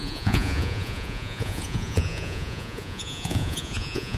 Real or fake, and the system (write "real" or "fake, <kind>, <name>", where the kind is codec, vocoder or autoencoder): fake, vocoder, Vocos